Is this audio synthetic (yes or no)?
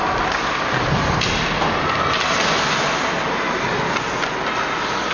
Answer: no